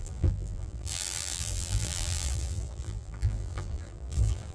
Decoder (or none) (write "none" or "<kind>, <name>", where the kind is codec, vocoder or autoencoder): vocoder, BigVGAN v2